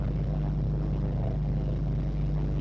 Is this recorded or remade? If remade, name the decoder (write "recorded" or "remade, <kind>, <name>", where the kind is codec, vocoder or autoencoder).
recorded